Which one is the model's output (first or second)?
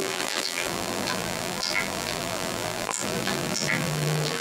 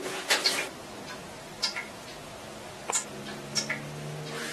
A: first